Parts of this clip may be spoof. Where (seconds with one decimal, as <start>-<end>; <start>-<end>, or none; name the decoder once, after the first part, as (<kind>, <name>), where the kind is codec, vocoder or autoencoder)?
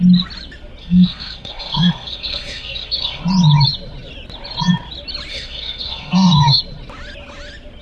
0.8-3.2 (codec, SNAC); 5.3-6.6